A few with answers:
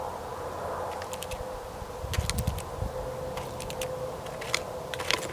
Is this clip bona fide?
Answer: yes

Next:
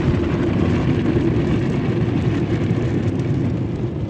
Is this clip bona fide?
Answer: yes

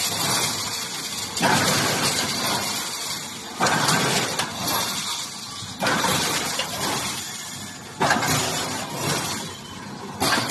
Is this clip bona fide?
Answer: yes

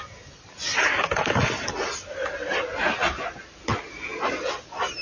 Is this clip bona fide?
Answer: yes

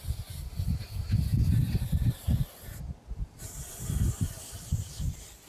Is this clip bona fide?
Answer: no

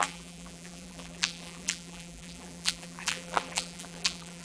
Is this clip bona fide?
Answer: no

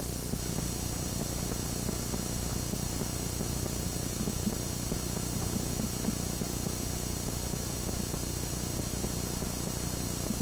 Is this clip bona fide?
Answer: yes